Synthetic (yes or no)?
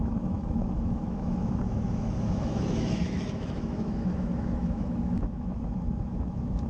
yes